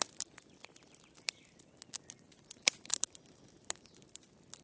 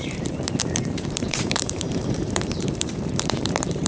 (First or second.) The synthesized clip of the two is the second